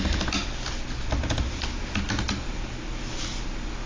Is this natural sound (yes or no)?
yes